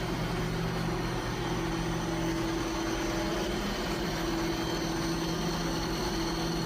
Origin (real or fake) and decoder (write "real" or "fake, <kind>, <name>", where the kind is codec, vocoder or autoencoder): real